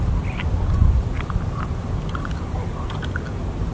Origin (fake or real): real